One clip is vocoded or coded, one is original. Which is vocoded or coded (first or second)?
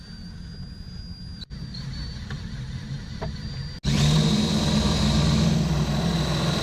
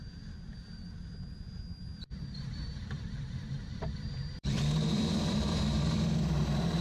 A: second